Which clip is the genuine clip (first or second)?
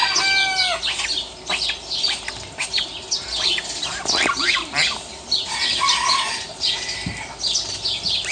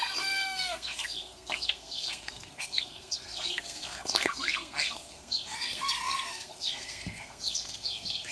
first